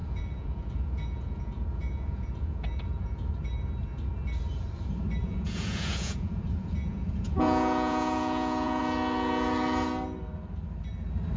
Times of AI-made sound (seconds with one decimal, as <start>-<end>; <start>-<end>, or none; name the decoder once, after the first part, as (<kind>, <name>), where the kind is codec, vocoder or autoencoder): 0.0-3.3 (vocoder, Vocos); 5.2-8.8